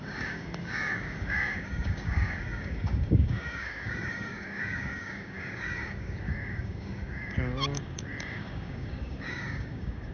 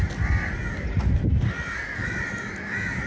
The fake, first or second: first